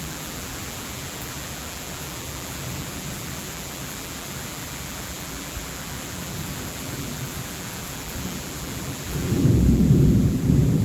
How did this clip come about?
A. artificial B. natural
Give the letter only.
A